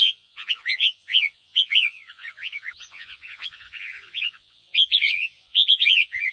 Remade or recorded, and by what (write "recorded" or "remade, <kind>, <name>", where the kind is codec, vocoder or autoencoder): remade, vocoder, Vocos